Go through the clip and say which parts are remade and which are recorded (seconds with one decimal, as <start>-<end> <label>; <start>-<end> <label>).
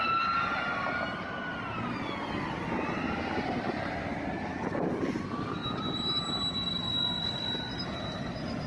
0.0-8.7 recorded